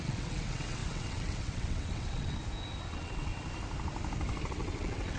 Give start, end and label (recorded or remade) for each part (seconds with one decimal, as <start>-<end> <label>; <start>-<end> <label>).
0.0-2.4 remade; 2.4-2.9 recorded; 2.9-3.3 remade; 3.3-4.5 recorded; 4.5-5.2 remade